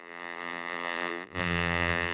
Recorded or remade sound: remade